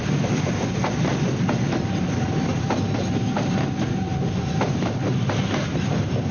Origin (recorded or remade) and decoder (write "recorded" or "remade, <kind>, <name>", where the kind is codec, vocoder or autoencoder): remade, vocoder, BigVGAN v2